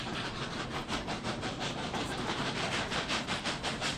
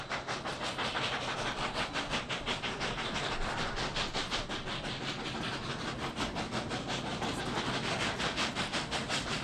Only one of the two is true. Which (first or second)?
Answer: second